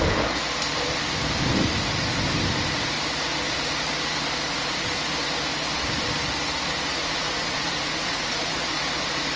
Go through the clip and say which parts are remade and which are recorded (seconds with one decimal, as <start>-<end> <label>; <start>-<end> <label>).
0.0-7.0 recorded; 7.0-8.8 remade; 8.8-9.4 recorded